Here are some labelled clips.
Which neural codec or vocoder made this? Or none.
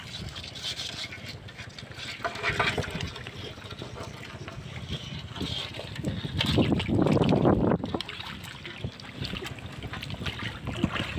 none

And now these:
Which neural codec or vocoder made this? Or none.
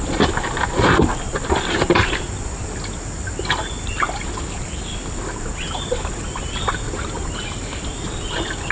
none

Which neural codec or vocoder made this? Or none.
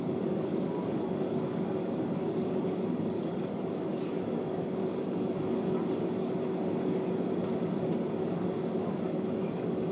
codec, DAC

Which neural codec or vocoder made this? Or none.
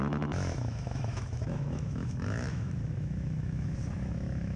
autoencoder, DAC-VAE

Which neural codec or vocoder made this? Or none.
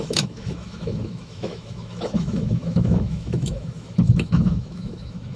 autoencoder, DAC-VAE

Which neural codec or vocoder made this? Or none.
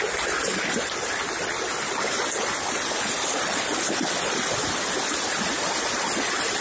vocoder, BigVGAN v2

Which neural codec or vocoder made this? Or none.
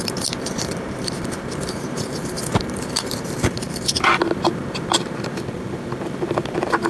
vocoder, BigVGAN v2